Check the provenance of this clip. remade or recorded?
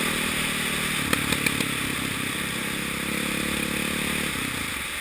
recorded